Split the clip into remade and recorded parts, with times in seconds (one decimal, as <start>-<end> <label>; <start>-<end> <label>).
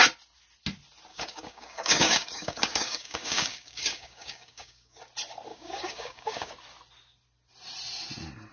0.0-1.1 recorded; 1.1-5.0 remade; 5.0-5.5 recorded; 5.5-6.5 remade; 6.5-8.5 recorded